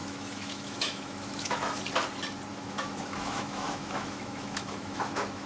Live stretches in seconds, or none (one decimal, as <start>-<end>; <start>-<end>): 1.8-2.5